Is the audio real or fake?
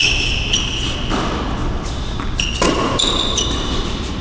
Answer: real